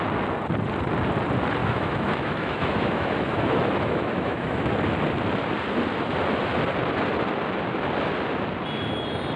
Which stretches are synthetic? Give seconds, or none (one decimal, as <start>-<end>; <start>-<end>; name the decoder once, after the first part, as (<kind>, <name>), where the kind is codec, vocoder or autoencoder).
1.6-4.7 (autoencoder, DAC-VAE)